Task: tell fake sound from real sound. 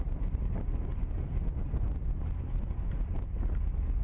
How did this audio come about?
real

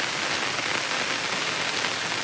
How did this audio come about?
real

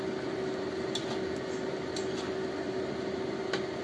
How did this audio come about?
real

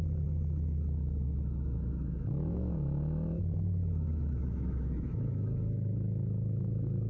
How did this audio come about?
fake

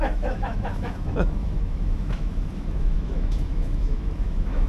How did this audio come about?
fake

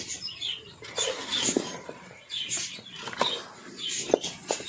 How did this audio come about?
real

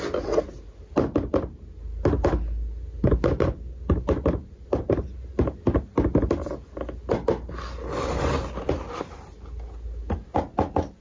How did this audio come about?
real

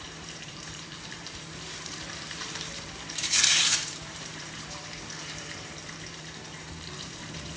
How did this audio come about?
fake